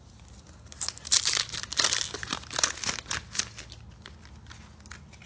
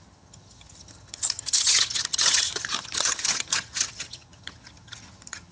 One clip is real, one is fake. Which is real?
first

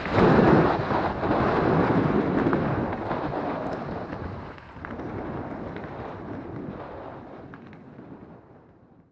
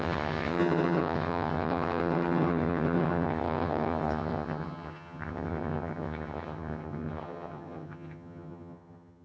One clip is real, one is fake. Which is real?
first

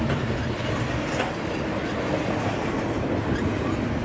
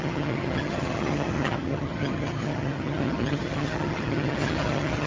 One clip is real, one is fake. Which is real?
first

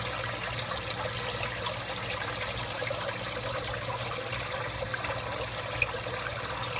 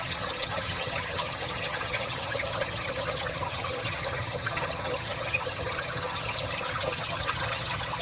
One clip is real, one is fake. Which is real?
first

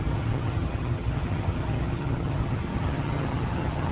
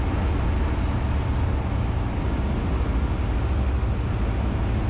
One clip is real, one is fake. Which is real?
second